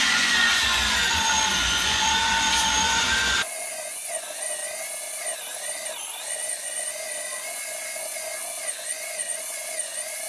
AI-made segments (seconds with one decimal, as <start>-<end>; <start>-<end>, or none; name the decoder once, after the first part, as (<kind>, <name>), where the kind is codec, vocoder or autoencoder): 0.0-4.6 (vocoder, Vocos); 6.3-10.3